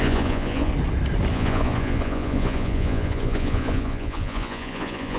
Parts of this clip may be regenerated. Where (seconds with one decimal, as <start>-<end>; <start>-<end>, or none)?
0.0-0.7; 1.3-5.2